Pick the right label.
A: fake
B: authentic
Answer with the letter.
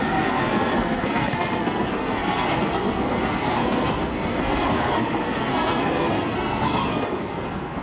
A